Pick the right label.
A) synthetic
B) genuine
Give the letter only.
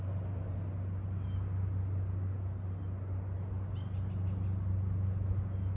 B